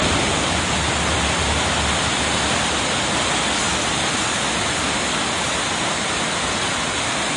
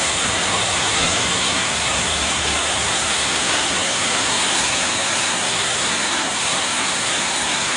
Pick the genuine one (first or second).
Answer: first